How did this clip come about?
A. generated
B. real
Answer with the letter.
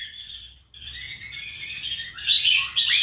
B